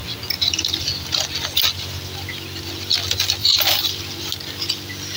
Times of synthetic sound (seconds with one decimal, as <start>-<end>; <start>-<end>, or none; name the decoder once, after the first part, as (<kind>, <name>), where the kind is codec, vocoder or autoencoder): 3.4-3.9 (vocoder, BigVGAN v2)